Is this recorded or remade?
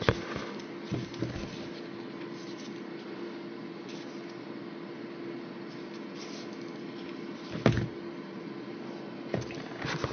recorded